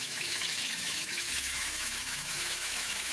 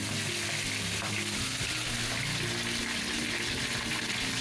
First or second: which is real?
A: second